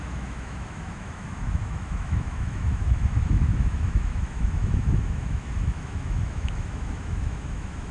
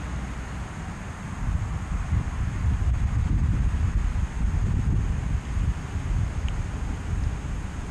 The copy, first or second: first